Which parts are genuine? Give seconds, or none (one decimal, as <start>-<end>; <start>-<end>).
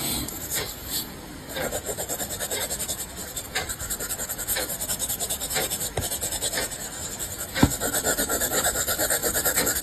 none